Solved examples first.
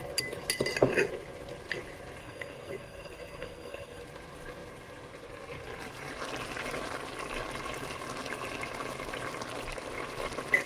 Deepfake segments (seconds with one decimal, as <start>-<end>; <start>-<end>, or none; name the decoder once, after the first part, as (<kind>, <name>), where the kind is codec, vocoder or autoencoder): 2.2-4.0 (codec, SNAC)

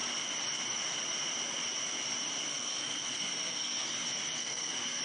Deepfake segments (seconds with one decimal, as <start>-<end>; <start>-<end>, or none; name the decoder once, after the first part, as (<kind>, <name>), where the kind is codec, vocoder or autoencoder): 2.5-3.9 (codec, SNAC); 4.4-5.0

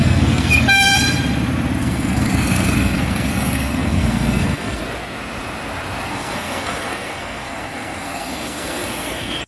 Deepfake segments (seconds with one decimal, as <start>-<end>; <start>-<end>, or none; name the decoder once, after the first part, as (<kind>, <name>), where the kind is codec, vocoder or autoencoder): 0.0-0.9 (codec, SNAC); 1.8-4.8; 6.1-9.5

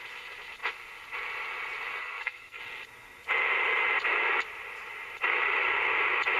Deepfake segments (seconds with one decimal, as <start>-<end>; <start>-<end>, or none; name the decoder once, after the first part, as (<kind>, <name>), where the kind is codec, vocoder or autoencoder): 2.0-2.6 (codec, SNAC)